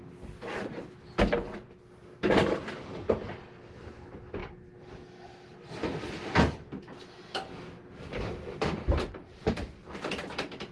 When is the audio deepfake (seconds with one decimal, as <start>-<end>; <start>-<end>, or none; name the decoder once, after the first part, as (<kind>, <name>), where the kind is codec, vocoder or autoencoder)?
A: none